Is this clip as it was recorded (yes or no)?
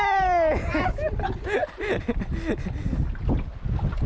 yes